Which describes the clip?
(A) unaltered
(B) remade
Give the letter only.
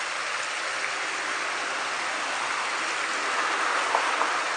A